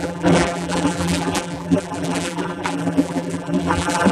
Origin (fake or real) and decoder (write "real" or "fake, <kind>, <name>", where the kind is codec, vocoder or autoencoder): fake, vocoder, BigVGAN v2